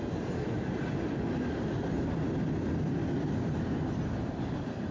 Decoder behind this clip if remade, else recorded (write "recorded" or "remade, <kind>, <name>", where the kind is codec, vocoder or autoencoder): recorded